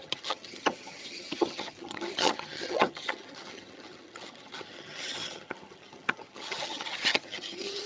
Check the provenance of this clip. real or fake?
fake